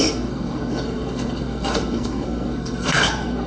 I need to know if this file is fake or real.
fake